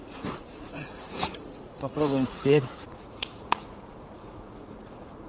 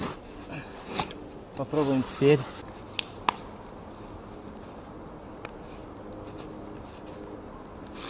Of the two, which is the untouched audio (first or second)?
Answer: second